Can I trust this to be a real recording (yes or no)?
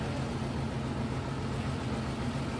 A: yes